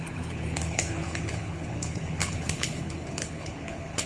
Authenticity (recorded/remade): remade